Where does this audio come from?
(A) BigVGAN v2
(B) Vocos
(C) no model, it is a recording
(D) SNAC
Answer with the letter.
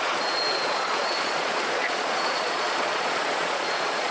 B